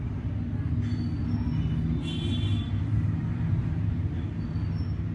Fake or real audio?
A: real